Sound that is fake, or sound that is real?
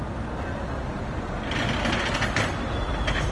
real